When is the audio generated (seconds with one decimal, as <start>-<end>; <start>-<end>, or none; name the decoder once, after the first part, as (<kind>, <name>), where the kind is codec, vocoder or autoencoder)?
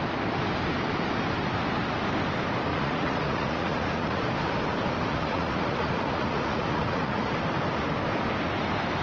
2.7-4.2 (vocoder, Vocos); 5.1-7.3